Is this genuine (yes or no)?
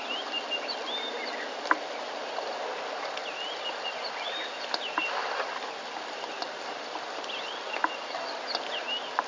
yes